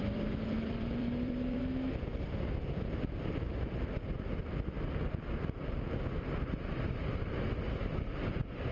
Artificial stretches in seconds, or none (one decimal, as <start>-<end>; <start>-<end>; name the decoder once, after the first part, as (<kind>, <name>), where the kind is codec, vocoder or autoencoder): 0.0-1.6 (vocoder, BigVGAN v2); 4.4-5.8

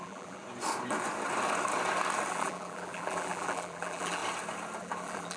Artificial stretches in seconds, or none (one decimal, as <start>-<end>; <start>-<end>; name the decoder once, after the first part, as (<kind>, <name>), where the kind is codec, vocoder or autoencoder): 0.0-0.4 (vocoder, BigVGAN v2); 2.3-4.2; 4.8-5.4

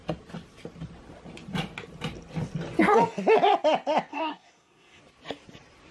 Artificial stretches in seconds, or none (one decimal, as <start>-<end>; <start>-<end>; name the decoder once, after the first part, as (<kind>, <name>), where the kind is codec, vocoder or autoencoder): 4.1-5.0 (codec, SNAC)

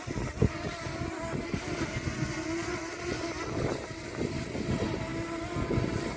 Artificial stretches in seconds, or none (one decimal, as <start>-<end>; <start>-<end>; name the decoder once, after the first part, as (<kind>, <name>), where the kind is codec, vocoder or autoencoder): none